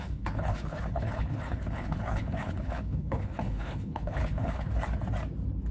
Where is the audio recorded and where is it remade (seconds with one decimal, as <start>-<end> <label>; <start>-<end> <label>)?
0.0-4.7 remade; 4.7-5.7 recorded